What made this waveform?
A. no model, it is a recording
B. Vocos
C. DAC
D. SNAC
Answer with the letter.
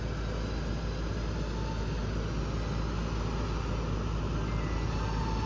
A